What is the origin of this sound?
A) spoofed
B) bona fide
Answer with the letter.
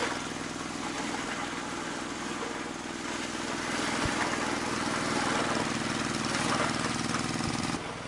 B